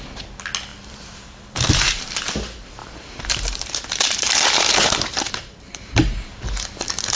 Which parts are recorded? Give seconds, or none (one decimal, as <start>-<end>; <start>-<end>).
0.0-0.7; 2.2-2.8